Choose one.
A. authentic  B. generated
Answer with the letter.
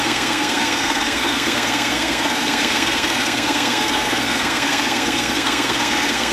B